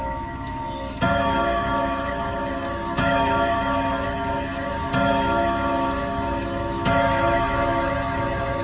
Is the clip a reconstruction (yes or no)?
yes